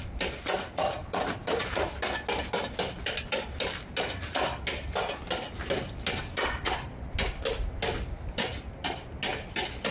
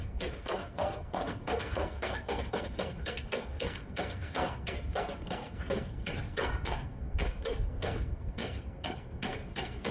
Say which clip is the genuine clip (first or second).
first